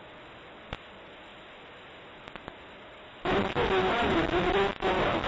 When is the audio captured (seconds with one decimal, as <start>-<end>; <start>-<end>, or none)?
0.0-5.3

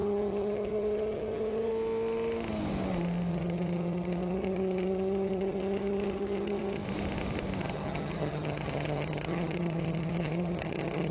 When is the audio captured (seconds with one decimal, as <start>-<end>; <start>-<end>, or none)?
1.7-3.3; 6.8-7.6

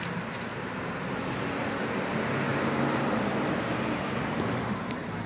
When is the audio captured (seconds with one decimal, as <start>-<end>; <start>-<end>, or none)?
0.0-5.3

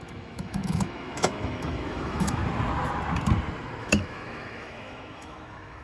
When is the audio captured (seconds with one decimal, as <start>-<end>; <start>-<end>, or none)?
2.4-3.8

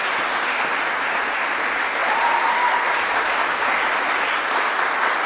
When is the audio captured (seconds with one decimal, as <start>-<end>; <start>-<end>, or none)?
0.0-5.3

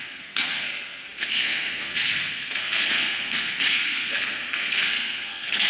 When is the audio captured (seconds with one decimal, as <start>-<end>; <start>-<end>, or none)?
none

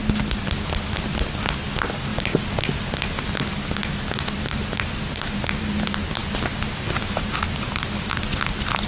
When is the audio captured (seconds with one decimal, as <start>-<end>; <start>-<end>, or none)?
0.0-8.9